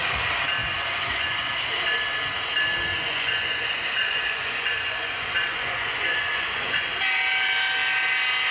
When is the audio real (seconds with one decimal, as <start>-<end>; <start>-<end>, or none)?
0.0-0.6; 1.5-2.9; 7.0-8.5